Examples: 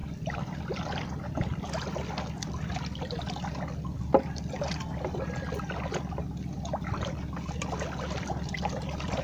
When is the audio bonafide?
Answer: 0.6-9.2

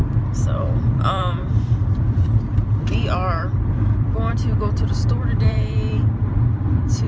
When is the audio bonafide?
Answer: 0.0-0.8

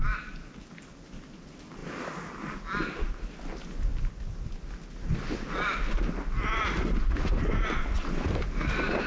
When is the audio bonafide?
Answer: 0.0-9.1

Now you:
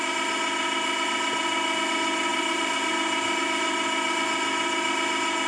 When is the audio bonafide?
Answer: 0.0-2.3; 2.9-5.5

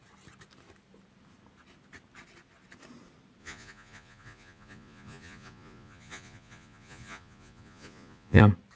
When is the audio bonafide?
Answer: 0.0-3.4; 8.4-8.8

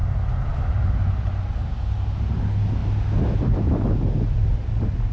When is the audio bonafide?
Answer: 0.0-5.1

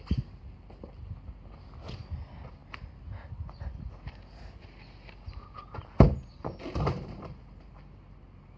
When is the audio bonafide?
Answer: 0.0-8.6